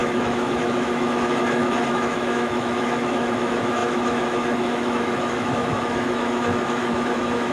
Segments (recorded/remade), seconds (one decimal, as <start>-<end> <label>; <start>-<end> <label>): 0.0-7.5 remade